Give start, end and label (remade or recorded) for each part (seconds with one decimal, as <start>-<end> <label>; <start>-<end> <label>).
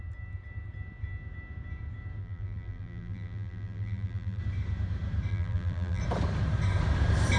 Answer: 0.0-2.2 recorded; 2.2-4.4 remade; 4.4-5.3 recorded; 5.3-6.0 remade; 6.0-7.4 recorded